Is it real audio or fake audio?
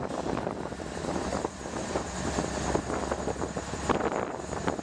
real